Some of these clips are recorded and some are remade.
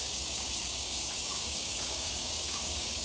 remade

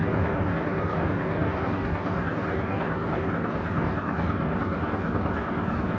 remade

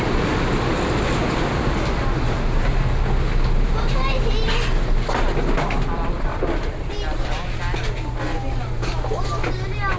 recorded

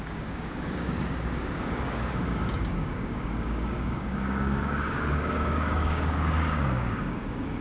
remade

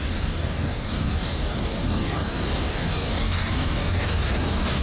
remade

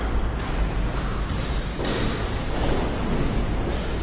recorded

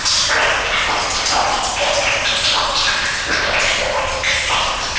recorded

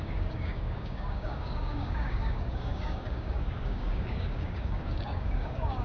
remade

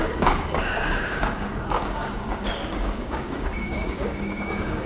remade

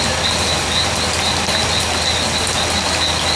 recorded